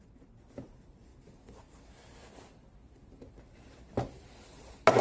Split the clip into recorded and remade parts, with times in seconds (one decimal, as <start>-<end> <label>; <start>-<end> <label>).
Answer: 0.0-5.0 recorded